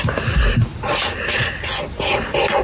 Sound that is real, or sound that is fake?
real